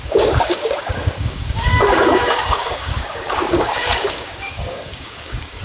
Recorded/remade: remade